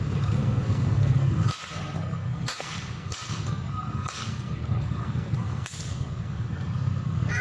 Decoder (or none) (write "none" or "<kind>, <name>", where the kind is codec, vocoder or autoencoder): codec, SNAC